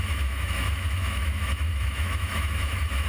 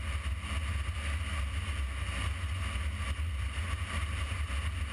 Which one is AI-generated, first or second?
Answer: first